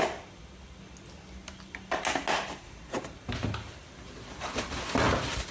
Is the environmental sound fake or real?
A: real